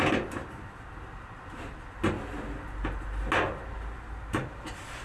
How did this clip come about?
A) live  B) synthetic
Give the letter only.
A